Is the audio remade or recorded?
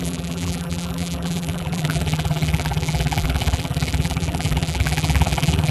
remade